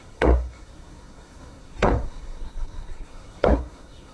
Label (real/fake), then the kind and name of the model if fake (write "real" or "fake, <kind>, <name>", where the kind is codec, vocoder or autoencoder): fake, codec, SNAC